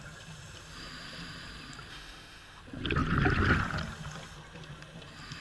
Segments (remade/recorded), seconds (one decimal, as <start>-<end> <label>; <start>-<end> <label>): 0.0-1.9 recorded; 1.9-2.6 remade; 2.6-5.4 recorded